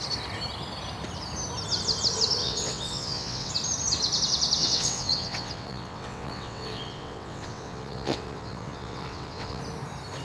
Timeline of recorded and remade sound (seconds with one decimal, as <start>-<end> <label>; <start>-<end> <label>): 0.0-2.4 recorded; 2.4-3.5 remade; 3.5-4.6 recorded; 4.6-9.6 remade; 9.6-10.2 recorded